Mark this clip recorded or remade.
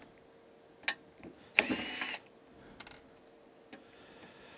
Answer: recorded